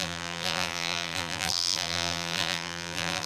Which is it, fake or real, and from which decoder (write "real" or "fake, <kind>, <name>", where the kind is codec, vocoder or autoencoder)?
fake, vocoder, BigVGAN v2